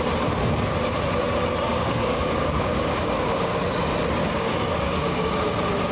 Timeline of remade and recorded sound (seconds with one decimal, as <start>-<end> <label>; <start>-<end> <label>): 0.0-1.7 recorded; 1.7-3.6 remade; 3.6-4.2 recorded; 4.2-5.4 remade; 5.4-5.9 recorded